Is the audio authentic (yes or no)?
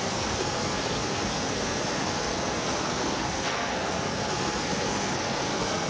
no